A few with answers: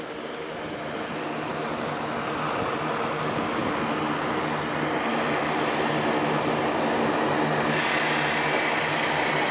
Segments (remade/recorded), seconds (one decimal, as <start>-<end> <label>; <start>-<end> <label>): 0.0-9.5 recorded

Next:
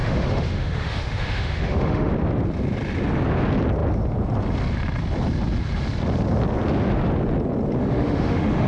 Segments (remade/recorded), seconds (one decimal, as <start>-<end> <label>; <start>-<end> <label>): 0.0-2.1 remade; 2.1-7.8 recorded; 7.8-8.7 remade

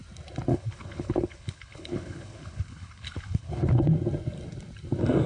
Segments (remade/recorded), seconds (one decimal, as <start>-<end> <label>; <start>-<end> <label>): 0.0-0.5 recorded; 0.5-3.7 remade; 3.7-5.3 recorded

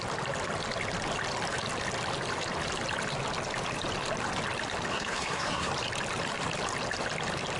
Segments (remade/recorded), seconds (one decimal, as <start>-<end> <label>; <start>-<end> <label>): 0.0-4.9 recorded; 4.9-5.7 remade; 5.7-7.6 recorded

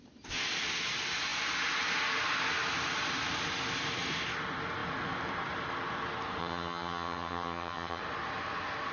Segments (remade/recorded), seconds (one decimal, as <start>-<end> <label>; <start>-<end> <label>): 0.0-6.4 recorded; 6.4-8.0 remade; 8.0-8.9 recorded

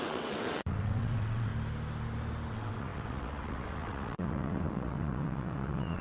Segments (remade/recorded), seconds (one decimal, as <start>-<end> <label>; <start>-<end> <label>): 0.0-1.5 remade; 1.5-2.5 recorded; 2.5-6.0 remade

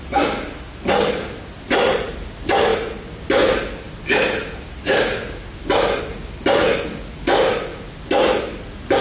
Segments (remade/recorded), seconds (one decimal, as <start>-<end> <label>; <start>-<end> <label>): 0.0-9.0 recorded

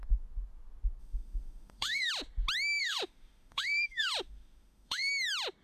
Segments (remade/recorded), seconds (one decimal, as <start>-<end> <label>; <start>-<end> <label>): 0.0-1.0 recorded; 1.0-2.1 remade; 2.1-2.8 recorded; 2.8-5.1 remade; 5.1-5.6 recorded